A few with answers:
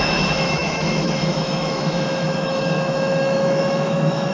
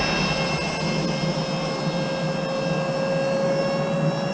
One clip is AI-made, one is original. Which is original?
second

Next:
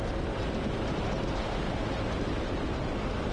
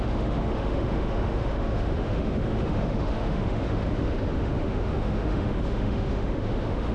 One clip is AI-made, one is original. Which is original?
first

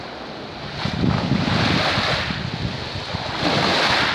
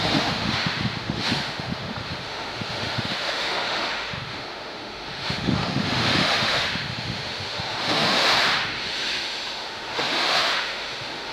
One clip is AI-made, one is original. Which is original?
first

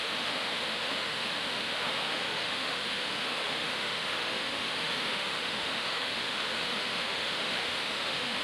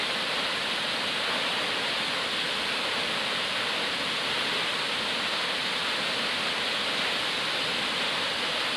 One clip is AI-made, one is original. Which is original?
second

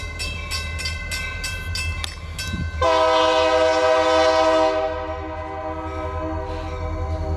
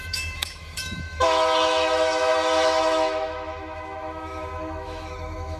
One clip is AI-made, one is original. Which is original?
first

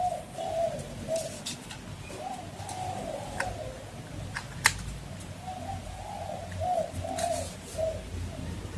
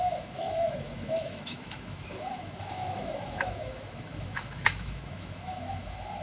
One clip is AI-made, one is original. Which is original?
first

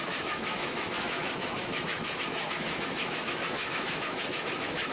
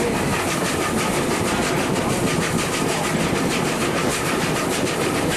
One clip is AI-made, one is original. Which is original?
second